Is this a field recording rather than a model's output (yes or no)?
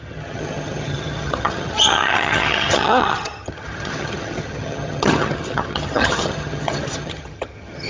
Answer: no